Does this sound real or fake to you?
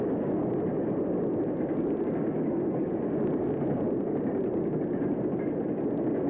real